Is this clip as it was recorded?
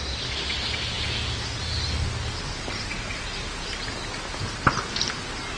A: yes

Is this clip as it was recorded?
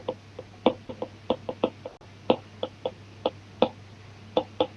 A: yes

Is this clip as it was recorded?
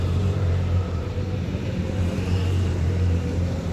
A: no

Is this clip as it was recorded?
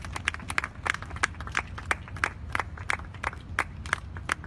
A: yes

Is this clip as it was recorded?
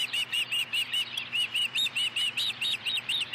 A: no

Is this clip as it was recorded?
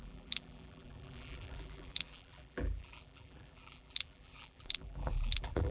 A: no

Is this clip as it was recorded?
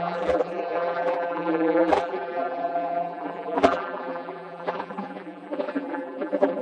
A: no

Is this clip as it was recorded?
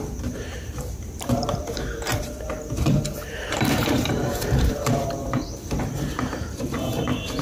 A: no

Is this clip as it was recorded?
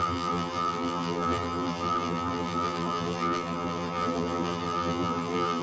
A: no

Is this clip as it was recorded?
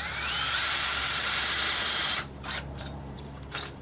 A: no